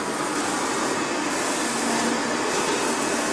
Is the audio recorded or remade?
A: recorded